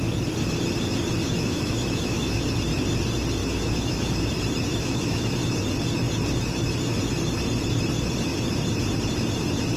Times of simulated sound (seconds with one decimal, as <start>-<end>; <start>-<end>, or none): 1.2-2.4; 3.4-4.3; 4.7-5.3